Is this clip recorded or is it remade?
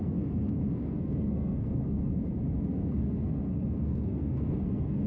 remade